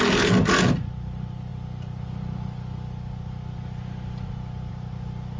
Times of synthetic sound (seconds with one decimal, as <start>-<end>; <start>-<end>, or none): none